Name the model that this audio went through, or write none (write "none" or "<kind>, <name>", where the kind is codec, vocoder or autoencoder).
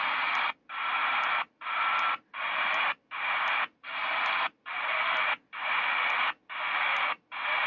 none